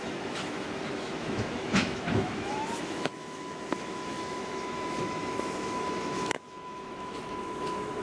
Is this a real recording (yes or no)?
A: no